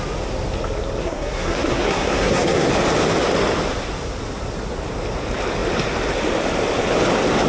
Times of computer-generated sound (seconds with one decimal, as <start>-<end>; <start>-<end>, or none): 1.0-2.7